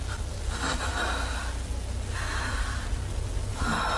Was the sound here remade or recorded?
recorded